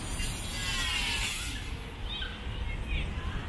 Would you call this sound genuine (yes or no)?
yes